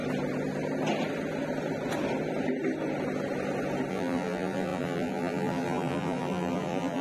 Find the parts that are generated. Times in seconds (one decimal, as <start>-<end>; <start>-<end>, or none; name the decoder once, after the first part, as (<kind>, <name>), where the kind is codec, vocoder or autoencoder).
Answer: 3.9-7.0 (vocoder, BigVGAN v2)